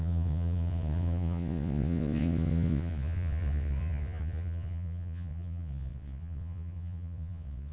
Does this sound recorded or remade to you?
remade